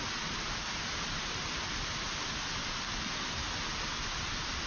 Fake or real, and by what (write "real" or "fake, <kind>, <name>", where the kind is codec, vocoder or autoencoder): real